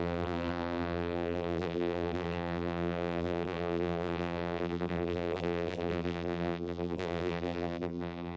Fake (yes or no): yes